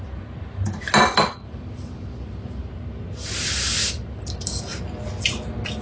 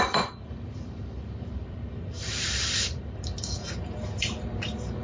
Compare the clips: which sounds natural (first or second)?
first